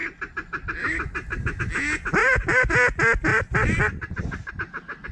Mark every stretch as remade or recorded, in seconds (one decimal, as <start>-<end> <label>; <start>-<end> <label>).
0.0-1.6 remade; 1.6-2.2 recorded; 2.2-2.7 remade; 2.7-3.3 recorded; 3.3-4.5 remade; 4.5-5.1 recorded